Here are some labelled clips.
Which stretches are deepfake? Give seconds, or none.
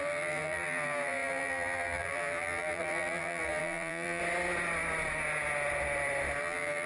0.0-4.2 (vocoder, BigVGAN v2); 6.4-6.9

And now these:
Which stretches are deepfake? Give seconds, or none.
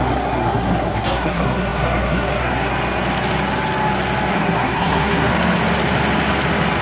0.0-2.7 (codec, SNAC); 4.3-5.3